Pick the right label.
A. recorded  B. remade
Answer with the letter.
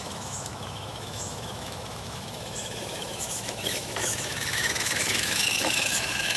B